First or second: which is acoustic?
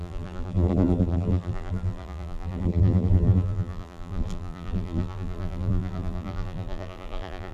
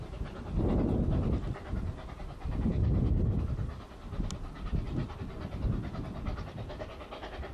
second